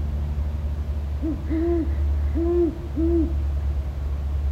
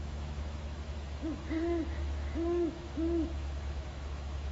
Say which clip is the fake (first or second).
second